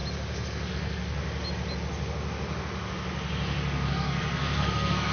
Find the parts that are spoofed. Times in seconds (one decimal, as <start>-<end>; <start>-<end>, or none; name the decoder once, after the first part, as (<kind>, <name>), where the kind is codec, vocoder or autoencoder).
0.7-1.2 (codec, SNAC); 3.9-5.1

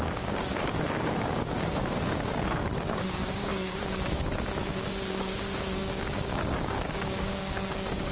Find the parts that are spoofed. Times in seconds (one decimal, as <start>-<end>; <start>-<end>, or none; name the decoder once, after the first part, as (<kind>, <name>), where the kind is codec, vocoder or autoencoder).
0.0-8.1 (codec, DAC)

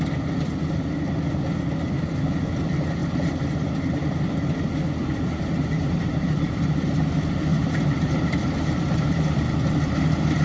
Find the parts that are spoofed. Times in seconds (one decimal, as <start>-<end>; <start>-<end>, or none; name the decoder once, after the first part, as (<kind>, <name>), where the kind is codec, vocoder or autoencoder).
3.0-4.3 (vocoder, BigVGAN v2); 5.0-7.0; 7.5-9.2